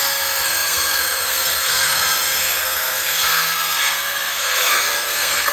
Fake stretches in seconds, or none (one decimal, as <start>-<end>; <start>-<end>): 0.0-5.5